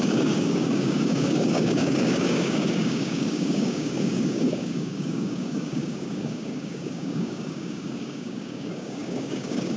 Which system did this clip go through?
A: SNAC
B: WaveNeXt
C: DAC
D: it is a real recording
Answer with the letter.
C